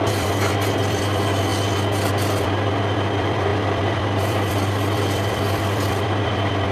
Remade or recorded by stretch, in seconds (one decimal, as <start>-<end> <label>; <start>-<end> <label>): 0.0-1.5 remade; 1.5-2.1 recorded; 2.1-6.7 remade